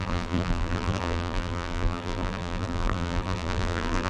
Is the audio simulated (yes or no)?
yes